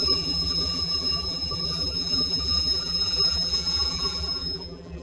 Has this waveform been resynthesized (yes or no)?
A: yes